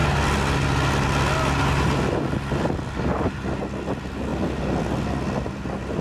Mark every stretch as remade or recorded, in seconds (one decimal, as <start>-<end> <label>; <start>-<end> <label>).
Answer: 0.0-6.0 recorded